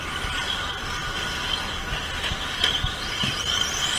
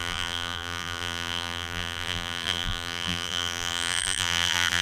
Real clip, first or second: first